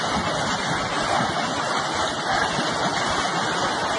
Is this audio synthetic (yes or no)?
no